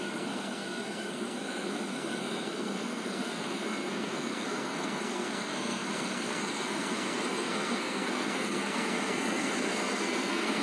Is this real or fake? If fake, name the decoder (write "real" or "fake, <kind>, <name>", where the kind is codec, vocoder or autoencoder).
fake, codec, SNAC